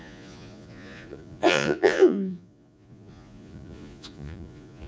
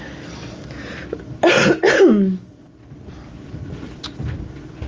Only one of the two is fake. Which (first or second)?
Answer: first